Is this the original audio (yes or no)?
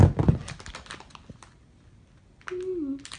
yes